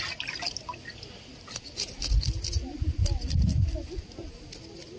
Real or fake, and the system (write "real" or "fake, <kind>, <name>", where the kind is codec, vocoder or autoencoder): real